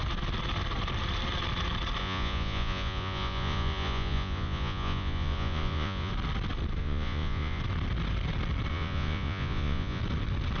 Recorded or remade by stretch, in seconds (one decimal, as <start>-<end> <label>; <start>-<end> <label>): 0.0-2.0 recorded; 2.0-6.1 remade; 6.1-6.8 recorded; 6.8-7.6 remade; 7.6-8.7 recorded; 8.7-10.0 remade; 10.0-10.6 recorded

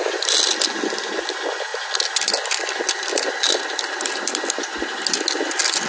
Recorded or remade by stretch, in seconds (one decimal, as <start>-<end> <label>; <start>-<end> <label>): 0.0-5.9 recorded

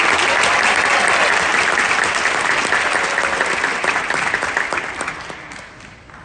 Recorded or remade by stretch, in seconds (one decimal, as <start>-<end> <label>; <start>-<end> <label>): 0.0-6.2 recorded

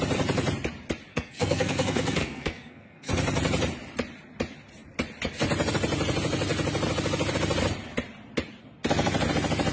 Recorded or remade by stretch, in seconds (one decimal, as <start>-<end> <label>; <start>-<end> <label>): 0.0-1.1 recorded; 1.1-3.1 remade; 3.1-9.7 recorded

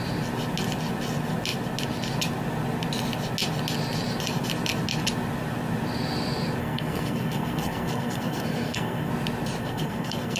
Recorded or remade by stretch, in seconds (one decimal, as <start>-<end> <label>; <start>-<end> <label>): 0.0-6.6 recorded; 6.6-9.1 remade; 9.1-9.6 recorded; 9.6-10.4 remade